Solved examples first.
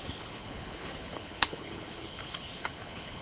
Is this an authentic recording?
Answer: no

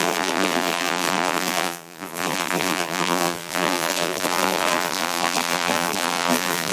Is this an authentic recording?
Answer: no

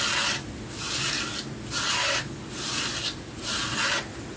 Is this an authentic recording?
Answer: yes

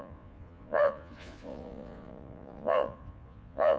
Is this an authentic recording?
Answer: no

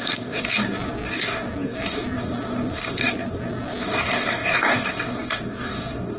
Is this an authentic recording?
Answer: no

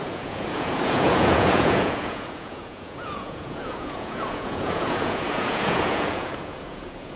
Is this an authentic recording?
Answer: no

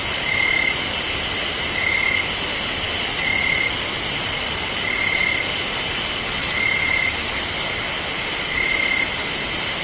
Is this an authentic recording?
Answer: yes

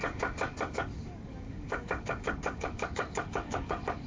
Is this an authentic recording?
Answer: no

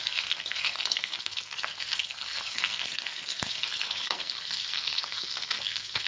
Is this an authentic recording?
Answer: no